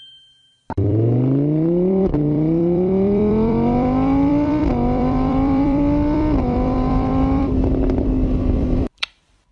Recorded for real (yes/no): no